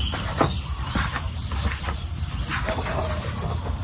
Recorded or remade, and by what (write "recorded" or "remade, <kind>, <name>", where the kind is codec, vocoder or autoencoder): recorded